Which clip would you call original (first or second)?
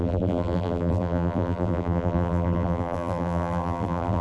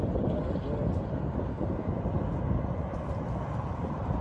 second